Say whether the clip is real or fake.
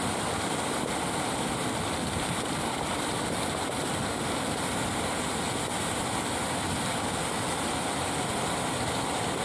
real